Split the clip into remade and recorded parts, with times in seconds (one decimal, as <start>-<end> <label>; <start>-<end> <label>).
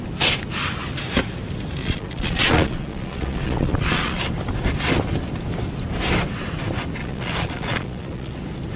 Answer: 0.0-1.8 recorded; 1.8-4.2 remade; 4.2-7.0 recorded; 7.0-8.3 remade; 8.3-8.8 recorded